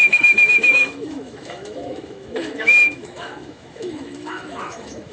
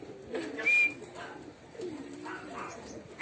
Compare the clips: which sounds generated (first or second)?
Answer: first